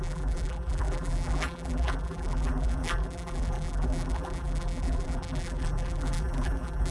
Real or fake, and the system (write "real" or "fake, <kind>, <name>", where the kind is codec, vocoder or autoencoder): fake, vocoder, BigVGAN v2